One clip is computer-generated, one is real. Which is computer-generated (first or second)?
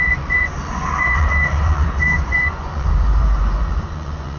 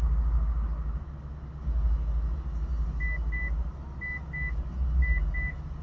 first